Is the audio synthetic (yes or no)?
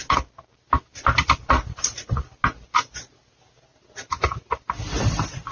no